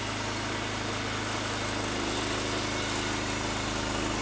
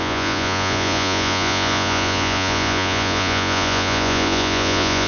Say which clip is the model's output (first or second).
second